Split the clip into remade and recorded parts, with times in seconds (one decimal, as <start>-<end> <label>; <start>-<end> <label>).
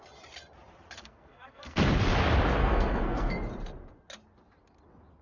0.0-1.0 recorded; 1.0-1.8 remade; 1.8-2.6 recorded; 2.6-3.3 remade; 3.3-5.2 recorded